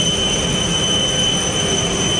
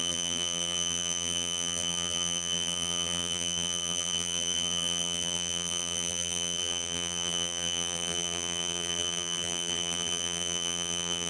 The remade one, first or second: second